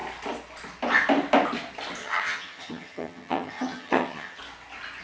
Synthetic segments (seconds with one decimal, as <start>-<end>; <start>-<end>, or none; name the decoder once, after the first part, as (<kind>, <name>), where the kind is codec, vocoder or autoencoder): 2.0-4.4 (vocoder, HiFi-GAN)